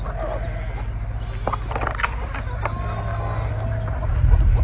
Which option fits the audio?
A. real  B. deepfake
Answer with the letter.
A